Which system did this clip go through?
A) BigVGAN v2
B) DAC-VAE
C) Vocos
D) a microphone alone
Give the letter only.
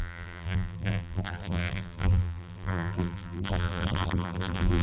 A